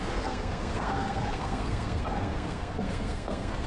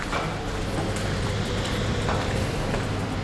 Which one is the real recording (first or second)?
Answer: second